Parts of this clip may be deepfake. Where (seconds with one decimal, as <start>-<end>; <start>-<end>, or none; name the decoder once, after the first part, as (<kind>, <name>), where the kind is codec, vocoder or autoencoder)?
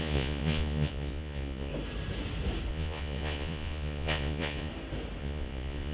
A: 0.0-1.7 (vocoder, Vocos); 2.7-4.7; 5.2-5.9